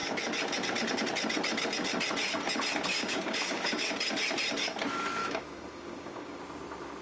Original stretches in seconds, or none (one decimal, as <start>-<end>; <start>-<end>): 0.0-2.9; 3.9-5.2; 6.4-7.0